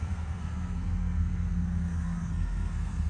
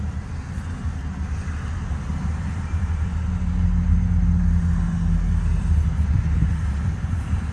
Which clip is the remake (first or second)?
first